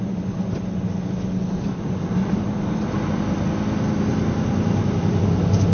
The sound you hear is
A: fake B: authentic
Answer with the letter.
B